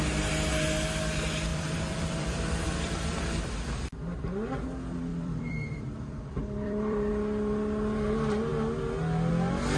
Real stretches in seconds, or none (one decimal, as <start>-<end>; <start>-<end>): 0.0-1.5; 3.4-5.1; 7.1-9.8